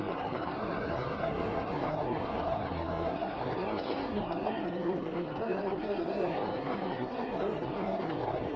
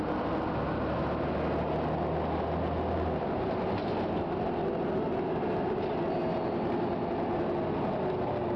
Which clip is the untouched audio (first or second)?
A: second